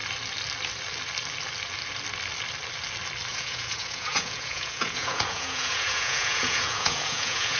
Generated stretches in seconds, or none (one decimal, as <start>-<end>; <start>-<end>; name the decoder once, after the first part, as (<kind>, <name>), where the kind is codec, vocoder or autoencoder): 3.3-7.6 (vocoder, Vocos)